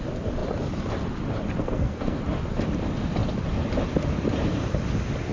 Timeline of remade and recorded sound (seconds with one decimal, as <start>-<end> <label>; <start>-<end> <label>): 0.0-1.6 recorded; 1.6-2.2 remade; 2.2-5.3 recorded